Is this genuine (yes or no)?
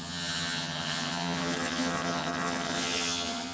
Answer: no